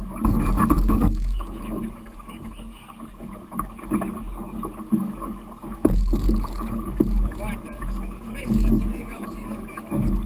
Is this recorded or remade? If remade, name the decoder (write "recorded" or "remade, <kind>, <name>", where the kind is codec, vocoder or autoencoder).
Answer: remade, codec, DAC